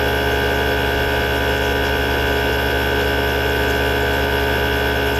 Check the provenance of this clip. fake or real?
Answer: real